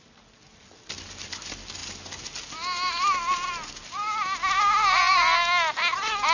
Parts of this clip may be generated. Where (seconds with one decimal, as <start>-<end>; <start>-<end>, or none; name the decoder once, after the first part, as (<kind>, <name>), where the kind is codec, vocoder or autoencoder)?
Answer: none

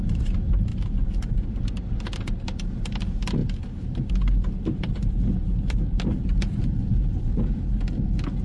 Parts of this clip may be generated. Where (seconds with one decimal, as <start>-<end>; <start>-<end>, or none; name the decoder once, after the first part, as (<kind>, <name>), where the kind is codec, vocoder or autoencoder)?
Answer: 0.7-1.2 (vocoder, BigVGAN v2); 5.4-6.6

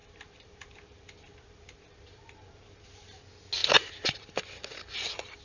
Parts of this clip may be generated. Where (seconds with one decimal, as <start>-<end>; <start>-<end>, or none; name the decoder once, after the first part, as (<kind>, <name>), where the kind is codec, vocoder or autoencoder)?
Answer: 0.0-3.2 (vocoder, BigVGAN v2); 3.6-4.3